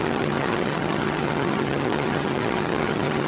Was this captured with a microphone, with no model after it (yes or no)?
no